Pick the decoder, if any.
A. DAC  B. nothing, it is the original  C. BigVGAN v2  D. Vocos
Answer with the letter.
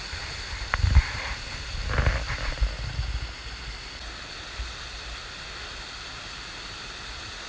B